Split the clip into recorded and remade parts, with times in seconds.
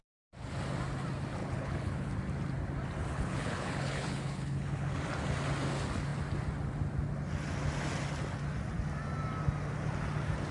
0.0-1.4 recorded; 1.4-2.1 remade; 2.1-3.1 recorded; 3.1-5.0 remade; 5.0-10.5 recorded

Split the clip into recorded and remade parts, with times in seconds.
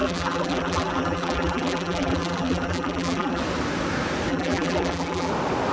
0.0-3.4 remade; 3.4-4.3 recorded; 4.3-5.3 remade; 5.3-5.7 recorded